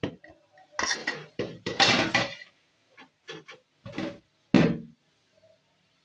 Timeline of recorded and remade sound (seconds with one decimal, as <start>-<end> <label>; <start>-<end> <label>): 0.0-1.0 recorded; 1.0-2.5 remade; 2.5-6.0 recorded